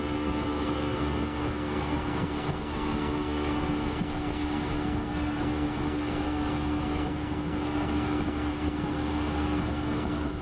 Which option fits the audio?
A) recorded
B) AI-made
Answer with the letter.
B